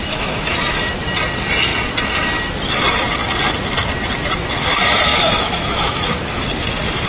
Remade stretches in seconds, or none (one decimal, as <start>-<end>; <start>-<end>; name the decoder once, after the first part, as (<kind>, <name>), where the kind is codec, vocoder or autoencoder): 0.0-0.9 (autoencoder, DAC-VAE); 5.1-6.0